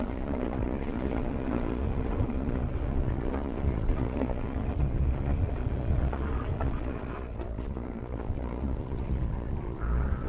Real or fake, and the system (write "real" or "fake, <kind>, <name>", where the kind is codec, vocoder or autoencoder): fake, vocoder, Vocos